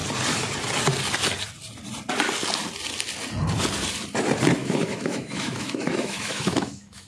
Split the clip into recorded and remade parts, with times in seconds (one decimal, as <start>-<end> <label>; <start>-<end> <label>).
0.0-4.6 recorded; 4.6-7.1 remade